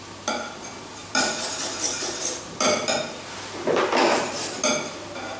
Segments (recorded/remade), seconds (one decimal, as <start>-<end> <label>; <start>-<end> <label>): 0.0-1.0 recorded; 1.0-3.3 remade; 3.3-5.4 recorded